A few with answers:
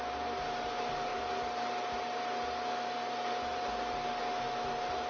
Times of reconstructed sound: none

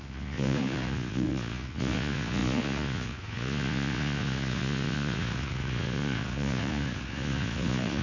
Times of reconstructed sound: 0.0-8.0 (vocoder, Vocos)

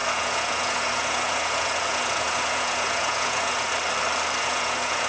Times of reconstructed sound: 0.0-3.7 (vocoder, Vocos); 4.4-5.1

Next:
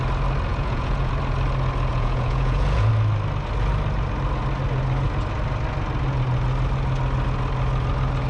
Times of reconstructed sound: 0.5-1.1 (vocoder, Vocos); 1.9-2.9